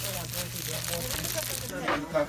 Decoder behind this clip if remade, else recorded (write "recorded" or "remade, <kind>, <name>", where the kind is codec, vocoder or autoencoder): recorded